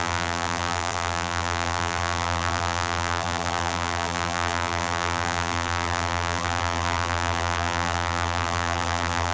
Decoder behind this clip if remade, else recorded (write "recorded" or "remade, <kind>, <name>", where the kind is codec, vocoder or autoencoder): remade, vocoder, BigVGAN v2